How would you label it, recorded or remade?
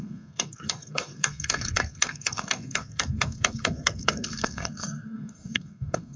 remade